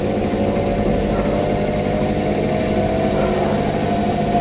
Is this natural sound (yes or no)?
yes